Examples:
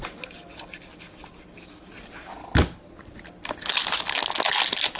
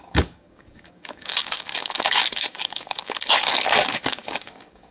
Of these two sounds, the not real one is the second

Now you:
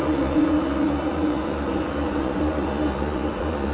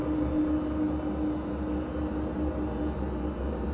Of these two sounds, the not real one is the first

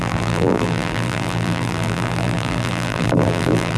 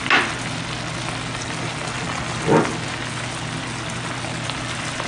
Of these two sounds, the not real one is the first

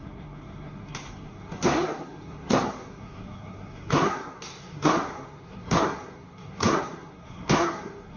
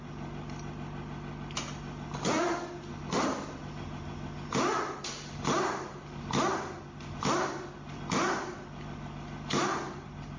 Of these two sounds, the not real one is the first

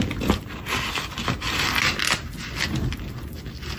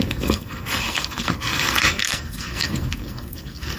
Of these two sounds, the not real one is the second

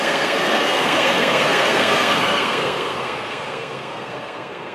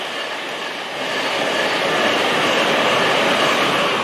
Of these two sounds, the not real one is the first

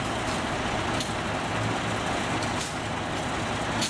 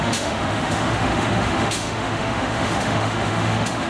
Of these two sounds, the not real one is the second